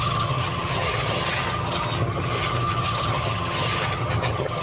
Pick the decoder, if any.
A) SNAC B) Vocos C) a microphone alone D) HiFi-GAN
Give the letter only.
D